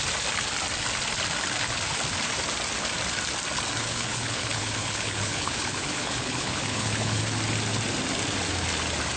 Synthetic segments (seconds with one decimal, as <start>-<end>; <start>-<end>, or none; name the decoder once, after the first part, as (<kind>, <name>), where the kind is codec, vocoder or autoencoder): 3.8-7.2 (codec, HILCodec)